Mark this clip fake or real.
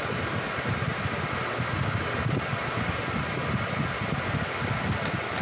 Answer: real